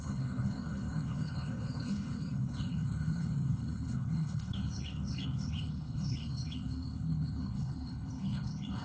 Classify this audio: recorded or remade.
remade